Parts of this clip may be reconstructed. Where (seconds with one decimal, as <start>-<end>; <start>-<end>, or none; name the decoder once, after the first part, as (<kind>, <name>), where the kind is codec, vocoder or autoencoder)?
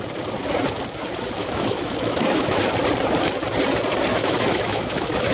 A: 1.4-2.6 (autoencoder, DAC-VAE); 4.1-5.3